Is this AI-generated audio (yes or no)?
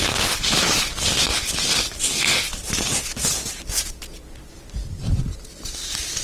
no